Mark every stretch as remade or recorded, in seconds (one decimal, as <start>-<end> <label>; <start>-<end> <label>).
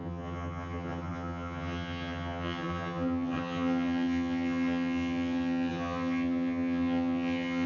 0.0-7.7 remade